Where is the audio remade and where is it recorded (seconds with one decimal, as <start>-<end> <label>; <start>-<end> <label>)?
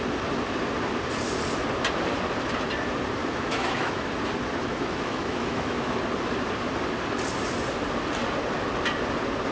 0.0-3.2 recorded; 3.2-4.1 remade; 4.1-4.6 recorded; 4.6-6.0 remade; 6.0-9.5 recorded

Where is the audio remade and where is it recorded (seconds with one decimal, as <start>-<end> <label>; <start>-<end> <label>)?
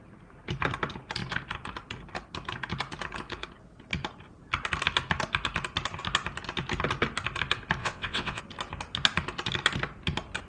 0.0-7.8 recorded; 7.8-8.4 remade; 8.4-10.5 recorded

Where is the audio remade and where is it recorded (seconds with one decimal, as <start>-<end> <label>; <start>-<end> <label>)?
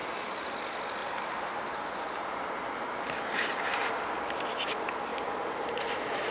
0.0-1.0 recorded; 1.0-3.8 remade; 3.8-5.1 recorded; 5.1-6.3 remade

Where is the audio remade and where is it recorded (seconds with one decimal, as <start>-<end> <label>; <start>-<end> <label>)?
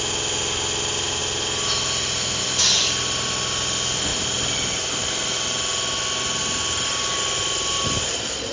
0.0-8.5 recorded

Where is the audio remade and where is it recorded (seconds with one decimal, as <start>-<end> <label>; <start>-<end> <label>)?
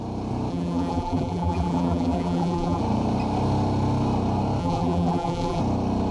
0.0-0.5 recorded; 0.5-2.8 remade; 2.8-4.6 recorded; 4.6-5.6 remade; 5.6-6.1 recorded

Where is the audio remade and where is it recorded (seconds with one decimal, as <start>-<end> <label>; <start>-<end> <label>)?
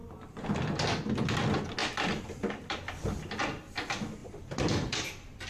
0.0-1.8 recorded; 1.8-3.2 remade; 3.2-4.2 recorded; 4.2-5.5 remade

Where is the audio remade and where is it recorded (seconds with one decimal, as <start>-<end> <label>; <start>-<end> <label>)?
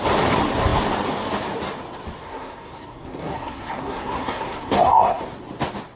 0.0-2.2 recorded; 2.2-5.2 remade; 5.2-6.0 recorded